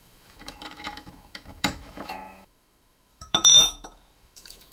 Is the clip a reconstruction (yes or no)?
yes